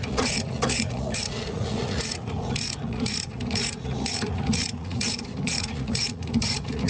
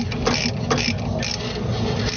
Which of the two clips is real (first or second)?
second